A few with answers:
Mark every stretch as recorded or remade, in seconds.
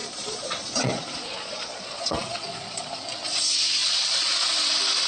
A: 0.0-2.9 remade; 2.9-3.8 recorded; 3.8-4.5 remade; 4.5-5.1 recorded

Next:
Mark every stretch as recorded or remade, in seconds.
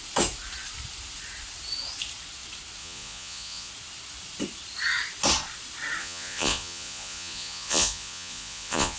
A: 0.0-2.8 recorded; 2.8-3.7 remade; 3.7-6.0 recorded; 6.0-9.0 remade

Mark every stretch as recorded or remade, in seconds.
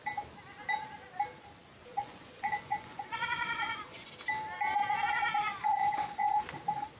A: 0.0-1.8 recorded; 1.8-4.1 remade; 4.1-5.8 recorded; 5.8-6.3 remade; 6.3-7.0 recorded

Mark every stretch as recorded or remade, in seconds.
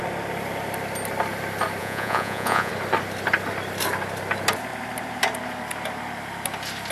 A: 0.0-1.8 recorded; 1.8-2.7 remade; 2.7-6.9 recorded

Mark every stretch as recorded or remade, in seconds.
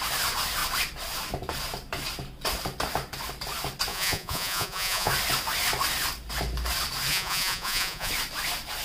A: 0.0-3.9 recorded; 3.9-5.1 remade; 5.1-7.1 recorded; 7.1-8.1 remade; 8.1-8.8 recorded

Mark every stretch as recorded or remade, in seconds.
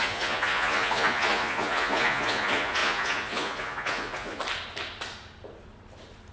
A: 0.0-4.4 remade; 4.4-6.3 recorded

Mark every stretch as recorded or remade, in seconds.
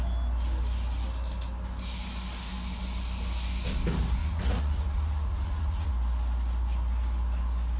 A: 0.0-4.2 recorded; 4.2-5.9 remade; 5.9-7.8 recorded